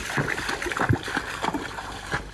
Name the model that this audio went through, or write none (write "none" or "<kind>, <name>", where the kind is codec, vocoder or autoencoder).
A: none